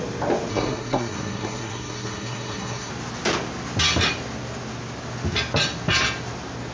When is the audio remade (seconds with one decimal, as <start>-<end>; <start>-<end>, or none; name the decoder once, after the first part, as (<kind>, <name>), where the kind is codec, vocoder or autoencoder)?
0.5-2.9 (codec, SNAC)